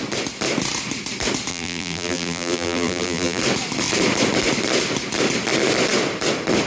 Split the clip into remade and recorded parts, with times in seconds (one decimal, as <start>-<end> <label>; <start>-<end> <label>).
0.0-1.5 recorded; 1.5-3.4 remade; 3.4-6.7 recorded